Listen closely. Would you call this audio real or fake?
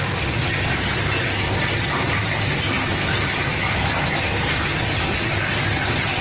real